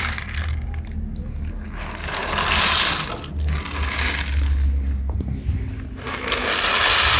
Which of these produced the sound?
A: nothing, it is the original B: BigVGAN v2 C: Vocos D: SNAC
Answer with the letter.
A